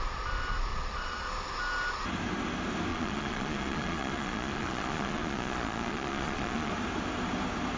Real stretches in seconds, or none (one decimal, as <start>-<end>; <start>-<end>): 0.0-0.7; 1.3-2.9; 6.7-7.8